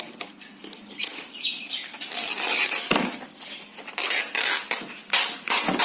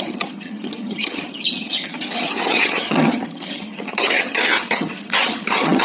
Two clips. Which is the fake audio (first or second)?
second